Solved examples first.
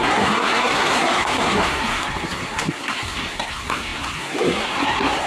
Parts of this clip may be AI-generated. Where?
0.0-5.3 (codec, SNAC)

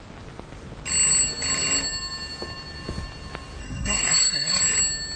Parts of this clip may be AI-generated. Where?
3.6-4.6 (codec, SNAC)

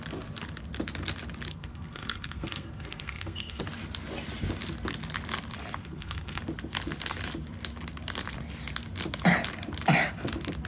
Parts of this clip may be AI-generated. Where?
1.5-3.6 (codec, SNAC); 5.8-6.4

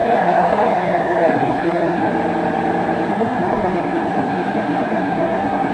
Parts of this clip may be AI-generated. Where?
0.0-2.1 (codec, SNAC); 3.1-5.7

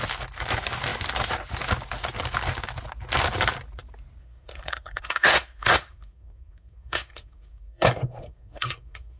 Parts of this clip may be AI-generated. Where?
4.2-9.2 (codec, SNAC)

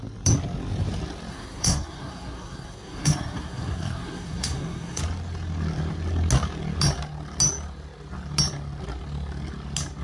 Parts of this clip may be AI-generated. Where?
1.3-5.0 (codec, SNAC)

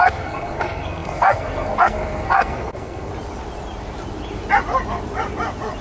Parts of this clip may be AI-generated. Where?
0.0-3.1 (codec, SNAC)

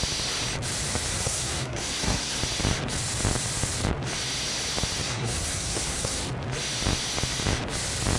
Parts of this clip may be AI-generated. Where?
1.1-2.4 (codec, SNAC); 5.0-6.2